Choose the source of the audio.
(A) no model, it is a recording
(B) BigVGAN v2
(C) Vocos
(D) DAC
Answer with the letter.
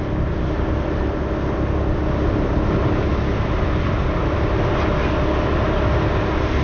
A